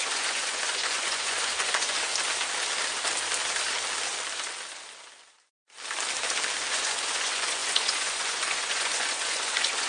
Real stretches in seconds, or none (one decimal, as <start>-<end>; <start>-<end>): 2.1-6.7